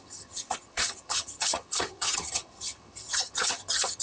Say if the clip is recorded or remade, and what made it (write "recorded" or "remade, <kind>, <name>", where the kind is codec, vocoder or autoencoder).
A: remade, vocoder, HiFi-GAN